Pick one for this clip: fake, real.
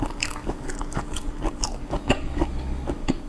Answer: fake